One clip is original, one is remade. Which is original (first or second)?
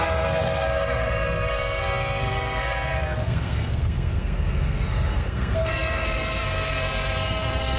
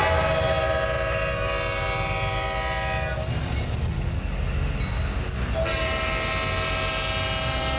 second